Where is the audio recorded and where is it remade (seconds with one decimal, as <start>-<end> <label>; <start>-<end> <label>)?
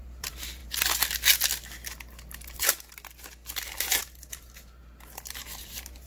0.0-0.6 remade; 0.6-3.8 recorded; 3.8-4.8 remade; 4.8-5.3 recorded; 5.3-6.1 remade